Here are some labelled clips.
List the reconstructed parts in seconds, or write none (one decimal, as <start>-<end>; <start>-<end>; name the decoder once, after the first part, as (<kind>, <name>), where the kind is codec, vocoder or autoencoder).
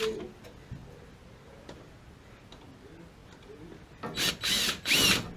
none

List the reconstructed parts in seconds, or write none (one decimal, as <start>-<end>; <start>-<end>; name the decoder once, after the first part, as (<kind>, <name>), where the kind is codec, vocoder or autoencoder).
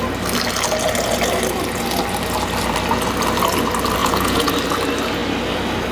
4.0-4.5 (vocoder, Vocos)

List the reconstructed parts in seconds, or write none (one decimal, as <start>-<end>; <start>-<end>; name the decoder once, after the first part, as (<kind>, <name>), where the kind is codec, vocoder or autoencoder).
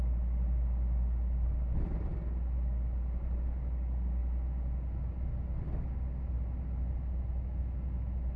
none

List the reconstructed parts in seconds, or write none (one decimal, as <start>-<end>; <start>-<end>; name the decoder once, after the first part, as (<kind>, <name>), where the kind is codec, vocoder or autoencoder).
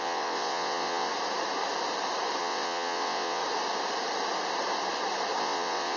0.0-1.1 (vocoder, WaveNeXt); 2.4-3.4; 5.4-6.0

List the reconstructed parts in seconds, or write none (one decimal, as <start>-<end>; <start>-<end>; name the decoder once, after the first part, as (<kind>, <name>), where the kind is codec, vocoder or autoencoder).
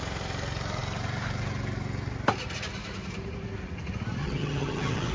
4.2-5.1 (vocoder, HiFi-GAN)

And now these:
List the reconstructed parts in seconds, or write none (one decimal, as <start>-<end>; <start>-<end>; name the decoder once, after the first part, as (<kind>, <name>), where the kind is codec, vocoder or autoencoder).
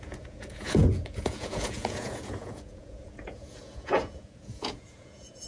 0.0-5.5 (vocoder, Vocos)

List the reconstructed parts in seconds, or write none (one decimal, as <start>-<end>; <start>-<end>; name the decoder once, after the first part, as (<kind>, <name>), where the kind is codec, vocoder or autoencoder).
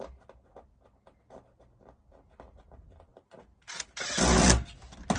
none